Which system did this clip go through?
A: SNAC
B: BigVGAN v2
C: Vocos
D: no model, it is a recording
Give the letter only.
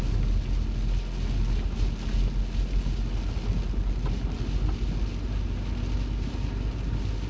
D